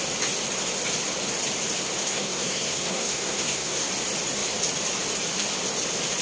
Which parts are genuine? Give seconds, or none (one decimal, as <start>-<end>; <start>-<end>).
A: 0.0-2.0; 3.9-6.2